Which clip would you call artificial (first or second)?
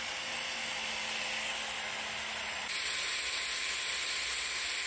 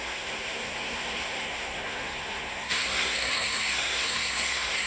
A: second